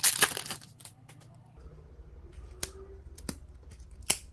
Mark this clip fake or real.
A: real